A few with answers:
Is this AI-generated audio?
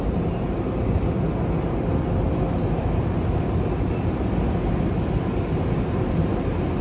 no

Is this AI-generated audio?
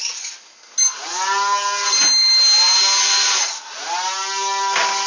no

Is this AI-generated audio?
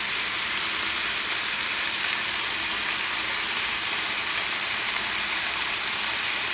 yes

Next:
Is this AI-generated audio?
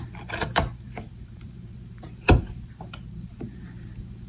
yes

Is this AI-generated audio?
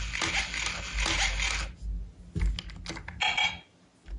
no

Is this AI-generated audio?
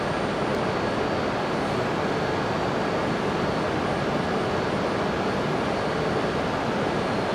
no